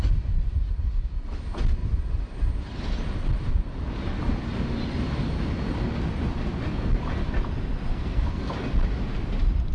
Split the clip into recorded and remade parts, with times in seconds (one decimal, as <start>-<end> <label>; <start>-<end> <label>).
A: 0.0-7.9 recorded; 7.9-8.5 remade; 8.5-9.7 recorded